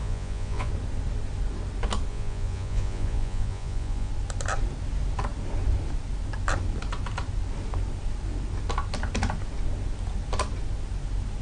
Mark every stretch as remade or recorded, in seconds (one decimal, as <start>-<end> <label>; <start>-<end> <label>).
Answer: 0.0-0.7 remade; 0.7-2.1 recorded; 2.1-4.1 remade; 4.1-11.4 recorded